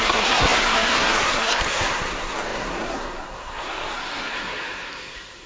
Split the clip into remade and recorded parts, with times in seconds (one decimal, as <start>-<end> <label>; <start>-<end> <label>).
0.0-5.5 remade